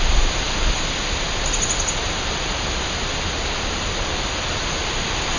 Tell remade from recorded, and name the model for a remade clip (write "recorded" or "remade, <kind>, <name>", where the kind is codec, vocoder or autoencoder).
recorded